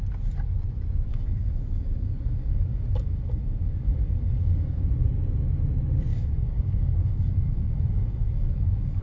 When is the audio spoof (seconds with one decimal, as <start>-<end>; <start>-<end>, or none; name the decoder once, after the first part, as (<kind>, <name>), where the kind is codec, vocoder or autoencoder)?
1.1-4.8 (codec, DAC); 6.1-9.0